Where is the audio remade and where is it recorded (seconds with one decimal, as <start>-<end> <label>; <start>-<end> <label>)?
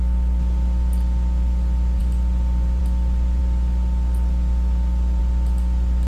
0.0-6.1 recorded